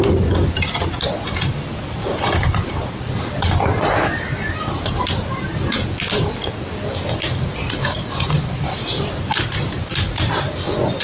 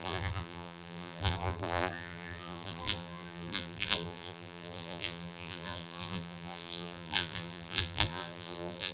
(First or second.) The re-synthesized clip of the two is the second